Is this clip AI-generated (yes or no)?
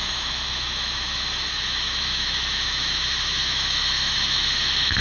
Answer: yes